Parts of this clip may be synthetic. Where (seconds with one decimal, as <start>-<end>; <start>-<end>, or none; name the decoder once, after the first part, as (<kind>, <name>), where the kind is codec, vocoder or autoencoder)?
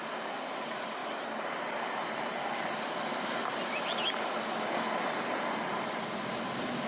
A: none